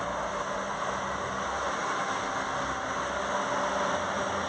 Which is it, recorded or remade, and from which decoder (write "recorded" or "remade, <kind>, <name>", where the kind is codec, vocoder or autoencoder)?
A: recorded